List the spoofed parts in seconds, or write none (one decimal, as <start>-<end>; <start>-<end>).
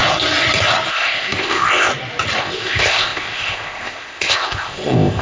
0.9-1.9; 2.4-5.2